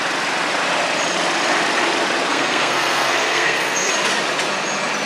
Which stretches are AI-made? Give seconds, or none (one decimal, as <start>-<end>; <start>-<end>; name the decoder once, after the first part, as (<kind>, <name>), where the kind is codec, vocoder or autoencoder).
2.3-3.9 (codec, SNAC)